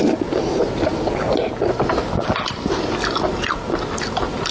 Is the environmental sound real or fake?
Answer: real